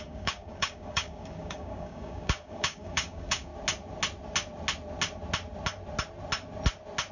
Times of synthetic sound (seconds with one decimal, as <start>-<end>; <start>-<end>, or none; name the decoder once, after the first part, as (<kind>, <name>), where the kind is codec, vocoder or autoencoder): 0.0-3.5 (codec, DAC)